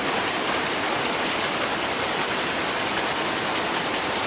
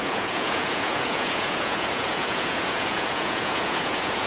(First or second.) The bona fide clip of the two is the first